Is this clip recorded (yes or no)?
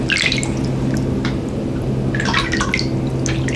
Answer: yes